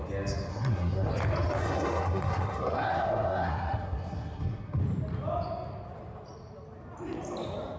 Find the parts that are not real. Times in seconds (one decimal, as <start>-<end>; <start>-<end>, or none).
0.5-1.1; 1.6-4.8